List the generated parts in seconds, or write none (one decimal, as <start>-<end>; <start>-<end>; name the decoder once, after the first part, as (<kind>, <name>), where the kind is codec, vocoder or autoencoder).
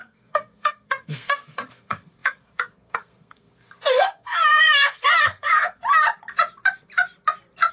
0.0-5.8 (codec, SNAC)